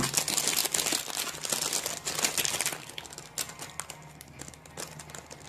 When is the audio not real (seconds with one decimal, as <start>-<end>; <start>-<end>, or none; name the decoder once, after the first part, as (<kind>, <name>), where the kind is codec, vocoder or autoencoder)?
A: none